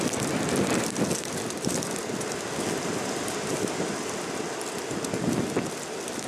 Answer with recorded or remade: recorded